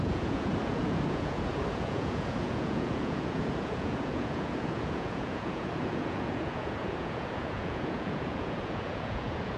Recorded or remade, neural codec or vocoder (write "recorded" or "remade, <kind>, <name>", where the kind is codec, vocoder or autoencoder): remade, vocoder, Vocos